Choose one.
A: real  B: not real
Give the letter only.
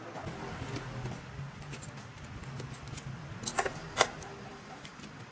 A